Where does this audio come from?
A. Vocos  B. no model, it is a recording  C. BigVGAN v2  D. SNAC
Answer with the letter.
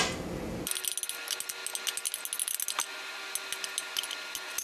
B